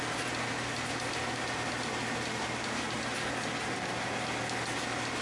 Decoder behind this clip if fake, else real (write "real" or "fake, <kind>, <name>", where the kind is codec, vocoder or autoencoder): real